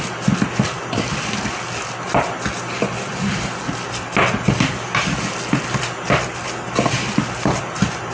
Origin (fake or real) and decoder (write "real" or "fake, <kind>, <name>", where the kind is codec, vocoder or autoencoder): real